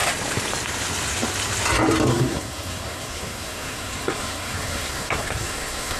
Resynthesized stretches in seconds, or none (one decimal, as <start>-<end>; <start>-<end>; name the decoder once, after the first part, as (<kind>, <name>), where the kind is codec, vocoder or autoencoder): 2.1-6.0 (codec, SNAC)